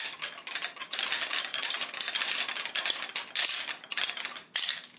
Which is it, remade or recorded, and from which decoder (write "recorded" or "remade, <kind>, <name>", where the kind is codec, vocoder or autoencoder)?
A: recorded